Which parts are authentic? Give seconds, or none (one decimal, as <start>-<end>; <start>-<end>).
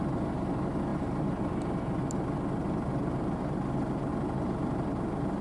0.0-5.4